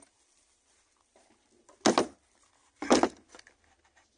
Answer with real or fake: real